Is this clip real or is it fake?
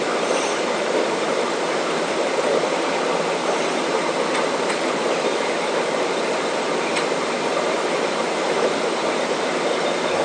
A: real